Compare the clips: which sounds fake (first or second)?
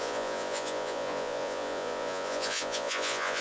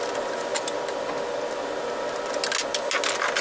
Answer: first